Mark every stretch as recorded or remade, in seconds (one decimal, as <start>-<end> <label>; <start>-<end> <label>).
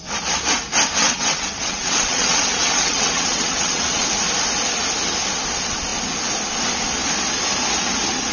0.0-1.0 recorded; 1.0-4.1 remade; 4.1-8.3 recorded